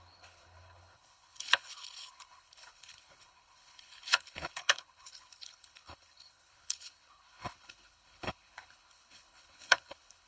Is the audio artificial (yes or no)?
yes